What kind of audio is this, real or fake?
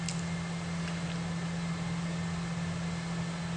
real